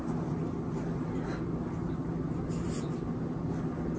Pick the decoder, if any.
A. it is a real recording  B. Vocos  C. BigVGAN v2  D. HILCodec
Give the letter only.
A